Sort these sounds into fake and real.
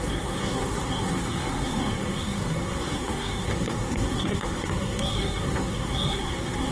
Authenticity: fake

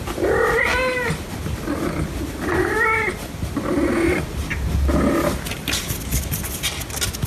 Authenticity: real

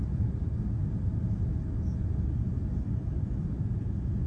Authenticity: real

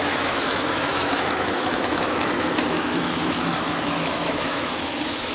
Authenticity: fake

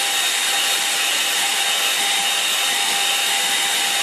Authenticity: real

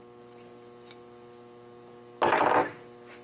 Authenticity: real